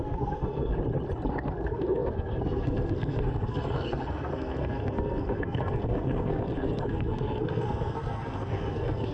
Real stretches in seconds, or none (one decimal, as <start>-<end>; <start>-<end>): 0.7-1.3